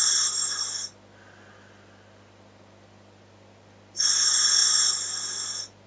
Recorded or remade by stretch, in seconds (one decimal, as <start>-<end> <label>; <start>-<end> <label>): 0.0-5.9 recorded